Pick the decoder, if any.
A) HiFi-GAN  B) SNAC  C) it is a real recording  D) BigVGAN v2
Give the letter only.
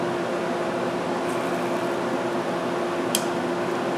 C